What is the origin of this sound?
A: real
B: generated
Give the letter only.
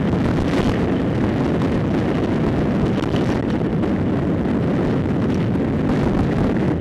A